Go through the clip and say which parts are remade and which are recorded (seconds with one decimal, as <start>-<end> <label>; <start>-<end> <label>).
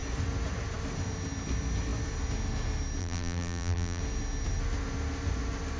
0.0-3.0 recorded; 3.0-4.0 remade; 4.0-5.8 recorded